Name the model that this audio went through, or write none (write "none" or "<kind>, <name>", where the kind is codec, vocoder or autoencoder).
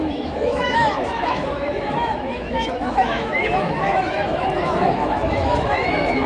autoencoder, DAC-VAE